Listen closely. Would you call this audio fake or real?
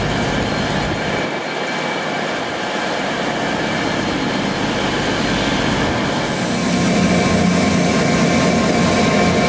real